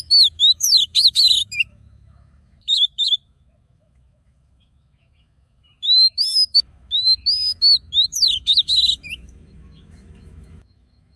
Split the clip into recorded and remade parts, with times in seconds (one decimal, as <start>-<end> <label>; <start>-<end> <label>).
0.0-11.2 remade

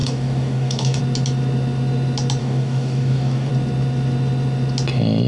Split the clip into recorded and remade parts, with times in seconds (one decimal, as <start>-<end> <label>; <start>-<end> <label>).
0.0-1.0 remade; 1.0-2.4 recorded; 2.4-3.5 remade; 3.5-5.3 recorded

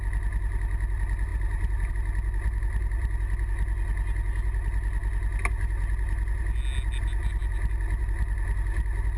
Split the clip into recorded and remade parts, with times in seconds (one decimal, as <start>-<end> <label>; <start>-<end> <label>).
0.0-1.3 recorded; 1.3-1.9 remade; 1.9-9.2 recorded

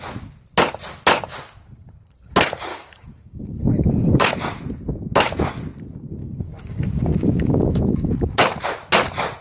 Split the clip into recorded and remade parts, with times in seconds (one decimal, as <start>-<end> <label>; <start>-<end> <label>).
0.0-2.7 recorded; 2.7-4.3 remade; 4.3-6.2 recorded; 6.2-7.8 remade; 7.8-9.4 recorded

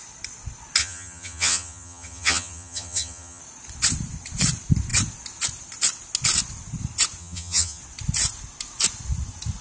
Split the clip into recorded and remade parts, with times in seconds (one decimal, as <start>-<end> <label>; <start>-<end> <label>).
0.0-0.8 recorded; 0.8-3.4 remade; 3.4-7.2 recorded; 7.2-7.8 remade; 7.8-9.6 recorded